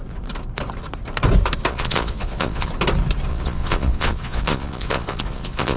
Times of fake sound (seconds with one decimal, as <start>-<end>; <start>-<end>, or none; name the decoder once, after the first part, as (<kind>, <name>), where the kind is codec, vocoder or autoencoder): 1.7-2.7 (vocoder, Vocos); 3.3-5.8